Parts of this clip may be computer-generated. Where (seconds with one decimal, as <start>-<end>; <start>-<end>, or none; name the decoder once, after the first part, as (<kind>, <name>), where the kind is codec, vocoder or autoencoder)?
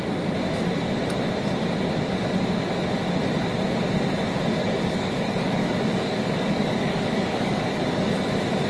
4.6-8.1 (codec, DAC)